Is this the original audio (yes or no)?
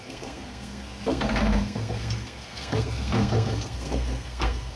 no